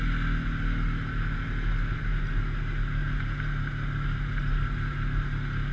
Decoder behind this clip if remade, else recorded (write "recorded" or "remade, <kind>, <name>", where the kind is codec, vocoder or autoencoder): recorded